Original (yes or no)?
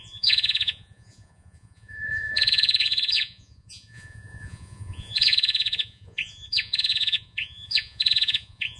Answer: no